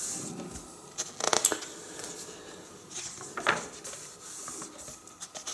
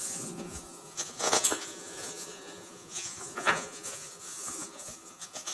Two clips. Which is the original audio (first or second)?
first